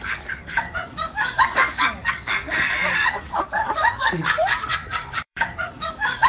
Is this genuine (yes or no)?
no